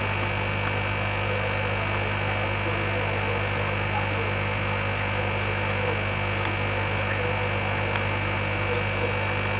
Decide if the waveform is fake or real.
real